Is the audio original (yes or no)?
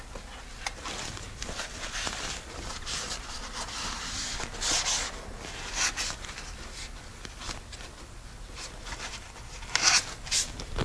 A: no